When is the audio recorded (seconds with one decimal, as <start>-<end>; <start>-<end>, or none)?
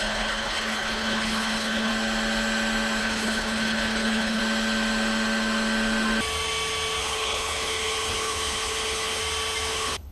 1.9-3.0; 4.4-7.0; 9.2-9.7